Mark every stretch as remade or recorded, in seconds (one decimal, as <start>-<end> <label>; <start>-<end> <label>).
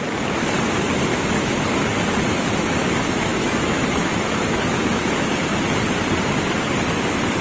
0.0-1.1 recorded; 1.1-1.6 remade; 1.6-2.8 recorded; 2.8-5.4 remade; 5.4-7.4 recorded